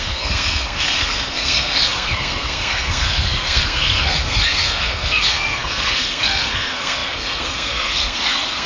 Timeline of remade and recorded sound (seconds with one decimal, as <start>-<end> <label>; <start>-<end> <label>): 0.0-8.7 remade